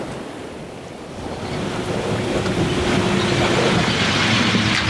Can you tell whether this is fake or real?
real